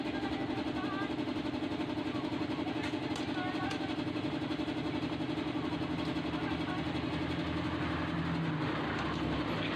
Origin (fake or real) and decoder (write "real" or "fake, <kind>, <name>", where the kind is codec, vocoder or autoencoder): real